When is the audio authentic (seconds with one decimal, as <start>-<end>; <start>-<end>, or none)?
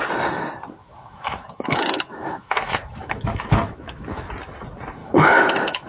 0.0-0.8; 4.3-5.0